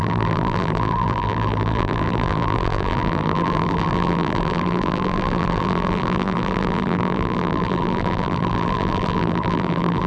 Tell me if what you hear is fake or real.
fake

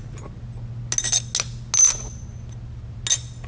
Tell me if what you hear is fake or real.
real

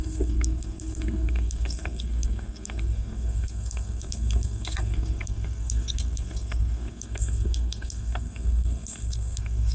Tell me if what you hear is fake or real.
fake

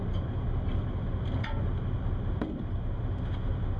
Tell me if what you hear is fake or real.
real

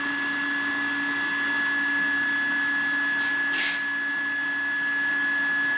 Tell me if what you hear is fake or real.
real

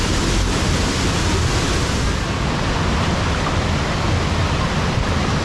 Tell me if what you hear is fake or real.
real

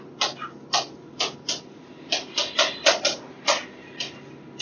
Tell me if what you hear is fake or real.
real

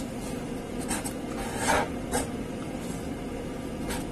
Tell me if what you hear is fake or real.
real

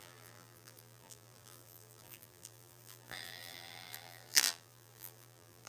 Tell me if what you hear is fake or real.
fake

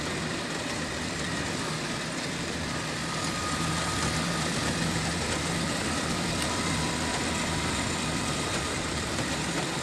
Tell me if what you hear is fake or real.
fake